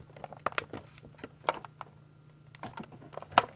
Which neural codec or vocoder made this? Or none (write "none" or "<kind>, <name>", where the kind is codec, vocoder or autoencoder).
none